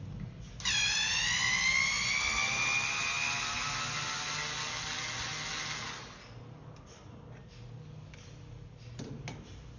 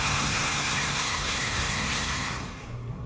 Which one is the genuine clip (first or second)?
first